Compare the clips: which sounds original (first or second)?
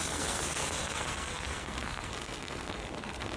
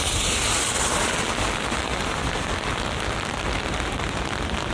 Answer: second